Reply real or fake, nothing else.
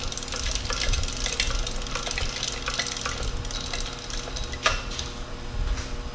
real